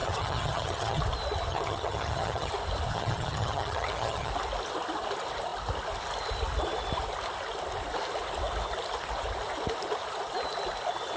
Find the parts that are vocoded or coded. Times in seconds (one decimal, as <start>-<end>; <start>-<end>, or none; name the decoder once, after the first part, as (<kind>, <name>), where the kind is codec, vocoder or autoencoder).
0.0-1.0 (vocoder, HiFi-GAN); 1.5-2.5; 2.9-4.3